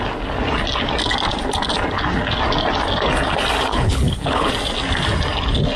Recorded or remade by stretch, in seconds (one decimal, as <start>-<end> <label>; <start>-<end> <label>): 0.0-3.7 recorded; 3.7-4.5 remade; 4.5-5.8 recorded